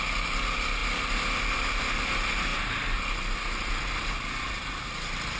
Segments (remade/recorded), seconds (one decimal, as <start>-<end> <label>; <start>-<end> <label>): 0.0-5.4 recorded